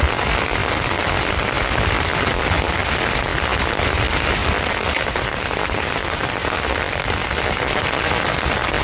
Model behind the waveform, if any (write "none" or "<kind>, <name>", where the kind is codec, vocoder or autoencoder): none